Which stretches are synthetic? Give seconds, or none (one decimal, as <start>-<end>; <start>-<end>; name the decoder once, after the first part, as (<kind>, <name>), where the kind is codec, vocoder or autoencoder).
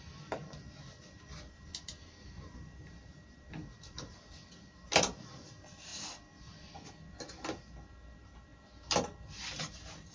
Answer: none